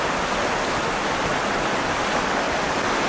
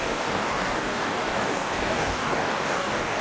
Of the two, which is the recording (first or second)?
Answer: first